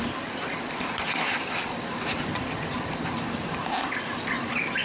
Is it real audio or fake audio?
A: fake